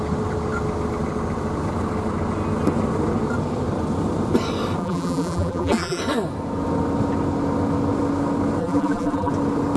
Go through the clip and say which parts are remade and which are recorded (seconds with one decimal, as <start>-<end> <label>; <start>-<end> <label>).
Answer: 0.0-4.8 recorded; 4.8-6.0 remade; 6.0-8.6 recorded; 8.6-9.3 remade; 9.3-9.8 recorded